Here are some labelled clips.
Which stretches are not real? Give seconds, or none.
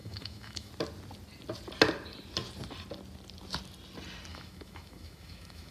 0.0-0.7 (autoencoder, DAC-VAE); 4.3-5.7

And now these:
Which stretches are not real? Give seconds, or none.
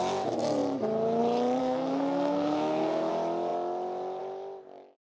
1.6-3.1 (codec, SNAC)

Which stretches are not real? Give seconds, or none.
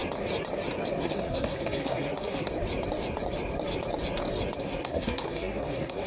1.0-2.5 (codec, SNAC); 4.6-6.1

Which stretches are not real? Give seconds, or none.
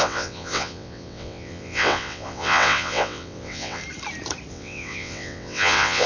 0.0-3.8 (vocoder, WaveNeXt); 4.5-6.1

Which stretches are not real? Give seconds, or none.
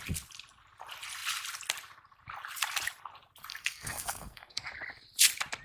3.5-4.7 (codec, SNAC)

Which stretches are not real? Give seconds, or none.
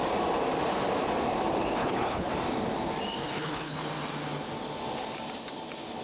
1.8-2.3 (codec, HILCodec); 3.2-3.8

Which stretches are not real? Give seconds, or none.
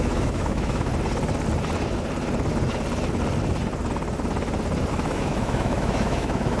0.0-0.9 (autoencoder, DAC-VAE); 4.9-6.6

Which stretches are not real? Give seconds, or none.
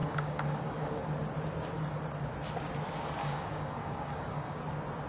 0.0-1.0 (codec, DAC); 3.2-4.6